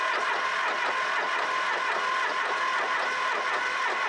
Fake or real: real